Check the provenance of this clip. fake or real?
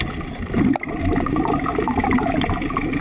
fake